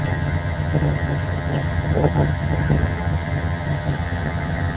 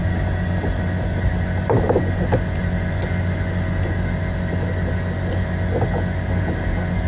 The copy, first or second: first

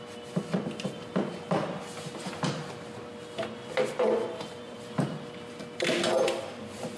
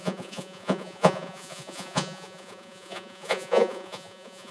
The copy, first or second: second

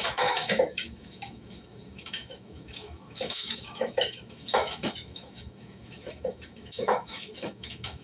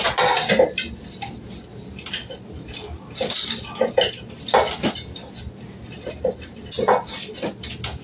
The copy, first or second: first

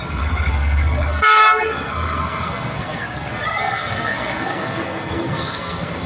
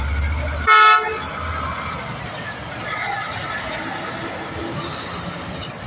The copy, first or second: first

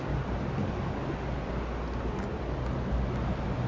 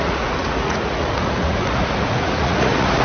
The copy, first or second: second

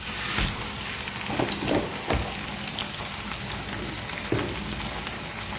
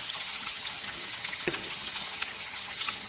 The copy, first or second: second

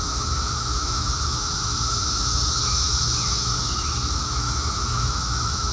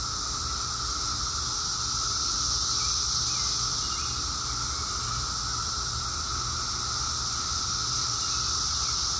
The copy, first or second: first